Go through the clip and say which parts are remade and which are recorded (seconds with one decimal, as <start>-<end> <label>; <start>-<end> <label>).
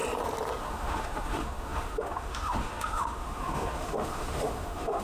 0.0-0.6 recorded; 0.6-5.0 remade